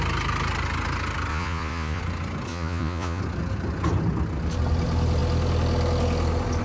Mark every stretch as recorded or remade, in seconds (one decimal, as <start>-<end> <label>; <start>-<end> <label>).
0.0-1.3 recorded; 1.3-2.0 remade; 2.0-2.5 recorded; 2.5-3.2 remade; 3.2-6.6 recorded

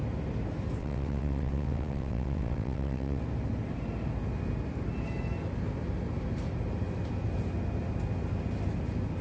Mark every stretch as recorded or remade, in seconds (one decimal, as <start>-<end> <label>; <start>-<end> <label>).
0.0-0.8 recorded; 0.8-3.2 remade; 3.2-9.2 recorded

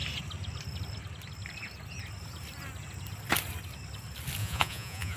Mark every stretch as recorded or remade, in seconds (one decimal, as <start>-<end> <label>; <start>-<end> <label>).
0.0-4.4 recorded; 4.4-5.2 remade

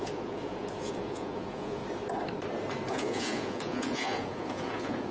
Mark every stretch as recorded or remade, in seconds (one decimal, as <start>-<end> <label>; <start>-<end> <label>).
0.0-1.8 remade; 1.8-2.9 recorded; 2.9-5.1 remade

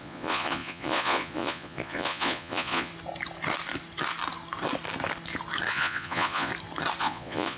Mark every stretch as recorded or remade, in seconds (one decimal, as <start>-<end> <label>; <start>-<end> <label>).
0.0-2.9 remade; 2.9-5.7 recorded; 5.7-6.5 remade; 6.5-7.0 recorded; 7.0-7.6 remade